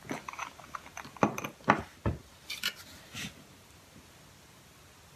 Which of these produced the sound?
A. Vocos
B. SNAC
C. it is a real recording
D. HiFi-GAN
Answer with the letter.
C